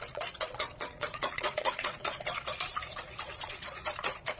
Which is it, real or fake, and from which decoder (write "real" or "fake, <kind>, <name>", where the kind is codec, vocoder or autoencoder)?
fake, vocoder, Vocos